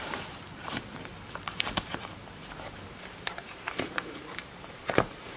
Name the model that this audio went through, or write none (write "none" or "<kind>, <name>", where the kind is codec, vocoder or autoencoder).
vocoder, BigVGAN v2